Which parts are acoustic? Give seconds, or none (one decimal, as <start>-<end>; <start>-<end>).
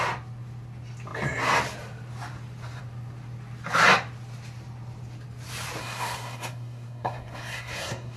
0.0-5.8